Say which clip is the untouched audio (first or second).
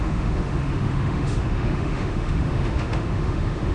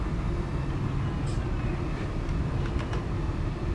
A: second